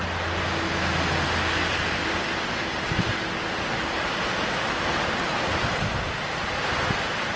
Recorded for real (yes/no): yes